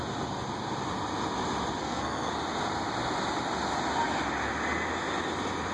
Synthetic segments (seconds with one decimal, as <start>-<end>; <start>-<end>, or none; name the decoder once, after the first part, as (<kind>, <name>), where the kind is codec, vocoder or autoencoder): 1.8-2.3 (codec, SNAC)